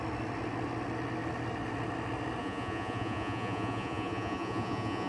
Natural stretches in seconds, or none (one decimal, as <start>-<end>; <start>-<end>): 0.0-2.4